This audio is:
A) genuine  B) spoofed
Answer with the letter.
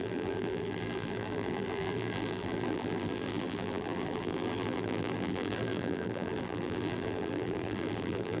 B